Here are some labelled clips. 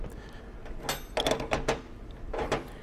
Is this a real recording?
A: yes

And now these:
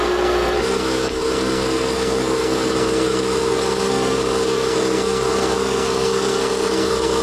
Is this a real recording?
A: no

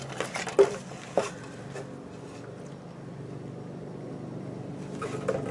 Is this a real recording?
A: yes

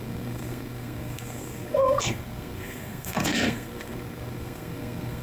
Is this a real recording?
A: no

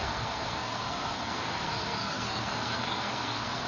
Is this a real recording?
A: no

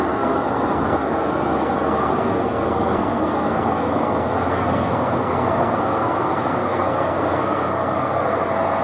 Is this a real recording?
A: no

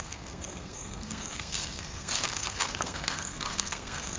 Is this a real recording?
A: no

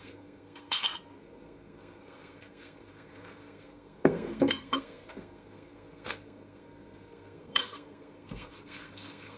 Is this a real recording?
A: no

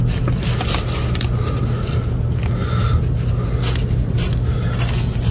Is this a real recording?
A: yes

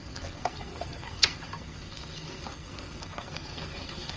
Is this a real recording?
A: no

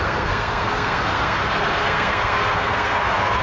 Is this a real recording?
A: no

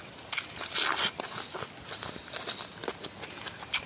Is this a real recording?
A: yes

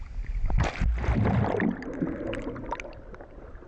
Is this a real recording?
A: yes